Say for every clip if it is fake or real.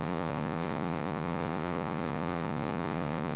fake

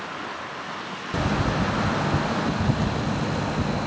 real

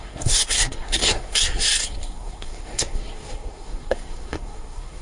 fake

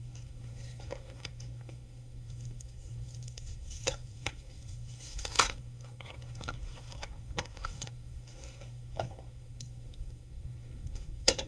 fake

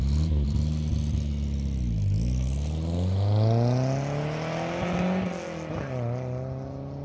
real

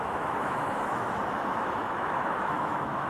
fake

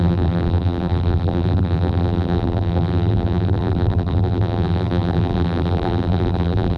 fake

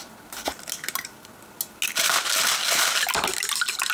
real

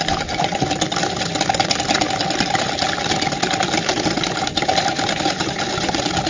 real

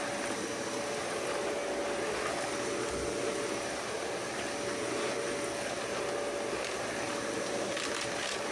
real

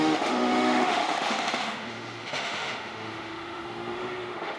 fake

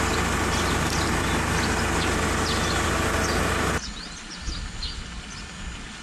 real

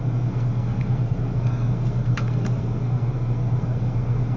fake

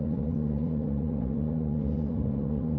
fake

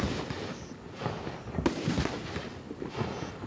real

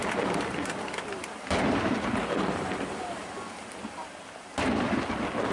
real